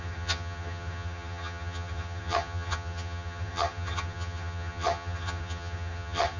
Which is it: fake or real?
fake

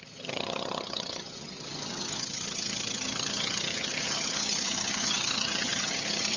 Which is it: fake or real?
fake